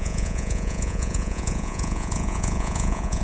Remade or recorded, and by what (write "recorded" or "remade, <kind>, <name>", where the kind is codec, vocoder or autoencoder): remade, vocoder, Vocos